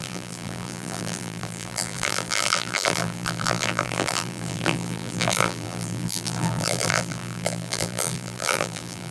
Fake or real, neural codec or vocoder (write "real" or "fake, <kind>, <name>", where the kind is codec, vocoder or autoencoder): fake, vocoder, BigVGAN v2